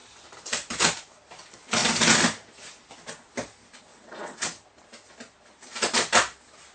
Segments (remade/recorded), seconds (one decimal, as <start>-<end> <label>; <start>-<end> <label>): 0.0-3.9 recorded; 3.9-4.5 remade; 4.5-6.7 recorded